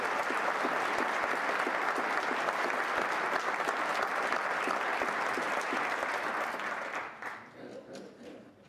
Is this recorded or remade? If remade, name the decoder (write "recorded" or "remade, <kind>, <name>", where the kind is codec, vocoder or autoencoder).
recorded